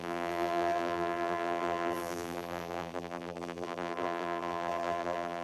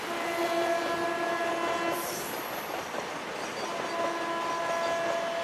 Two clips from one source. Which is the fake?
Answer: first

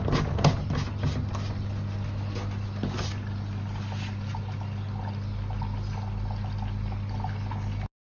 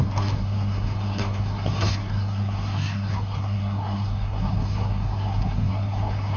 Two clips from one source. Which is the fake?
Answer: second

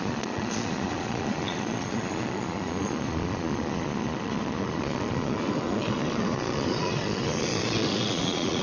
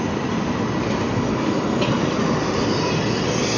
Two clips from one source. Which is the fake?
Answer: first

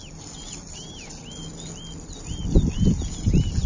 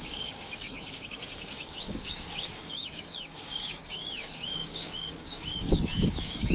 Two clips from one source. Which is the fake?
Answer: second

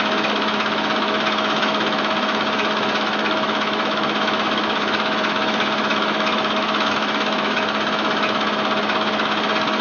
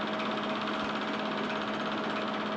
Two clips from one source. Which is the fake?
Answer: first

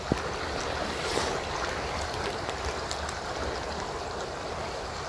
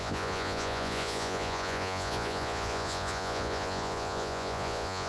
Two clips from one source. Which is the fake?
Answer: second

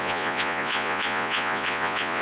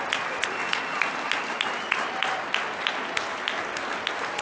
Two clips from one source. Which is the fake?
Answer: first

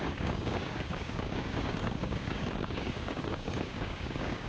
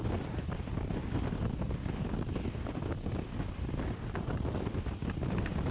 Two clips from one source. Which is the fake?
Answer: first